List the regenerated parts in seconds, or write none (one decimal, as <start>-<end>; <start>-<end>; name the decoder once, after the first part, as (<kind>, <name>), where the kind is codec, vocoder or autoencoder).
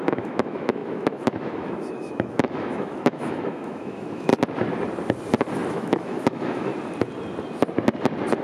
0.0-4.3 (autoencoder, DAC-VAE); 5.7-6.7